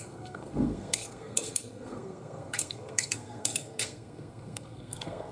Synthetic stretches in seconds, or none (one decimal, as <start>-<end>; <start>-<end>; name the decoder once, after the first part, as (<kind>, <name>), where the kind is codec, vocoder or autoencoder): 0.0-5.3 (codec, SNAC)